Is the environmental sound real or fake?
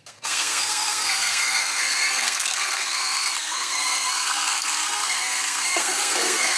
fake